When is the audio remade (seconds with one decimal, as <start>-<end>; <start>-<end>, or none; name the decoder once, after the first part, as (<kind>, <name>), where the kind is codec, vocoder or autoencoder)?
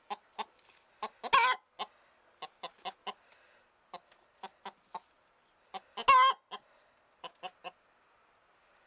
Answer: none